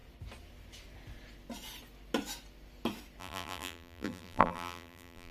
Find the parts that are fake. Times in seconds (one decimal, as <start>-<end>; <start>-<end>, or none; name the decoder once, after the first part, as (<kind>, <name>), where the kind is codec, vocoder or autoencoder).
3.2-5.3 (vocoder, BigVGAN v2)